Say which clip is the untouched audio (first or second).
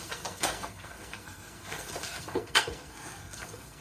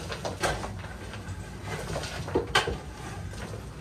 second